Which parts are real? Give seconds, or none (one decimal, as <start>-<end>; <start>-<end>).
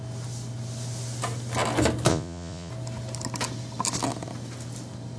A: 0.0-2.1; 2.7-5.2